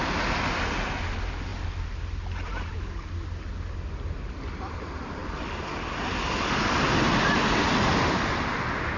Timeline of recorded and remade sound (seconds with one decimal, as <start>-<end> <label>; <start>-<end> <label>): 0.0-9.0 recorded